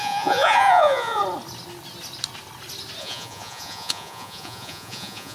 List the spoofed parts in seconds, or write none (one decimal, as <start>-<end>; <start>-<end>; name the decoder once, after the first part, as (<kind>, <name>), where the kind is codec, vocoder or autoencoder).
0.0-1.2 (vocoder, Vocos); 3.0-5.3